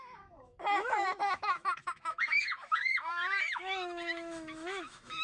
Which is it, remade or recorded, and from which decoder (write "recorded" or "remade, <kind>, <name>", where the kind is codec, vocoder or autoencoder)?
remade, autoencoder, DAC-VAE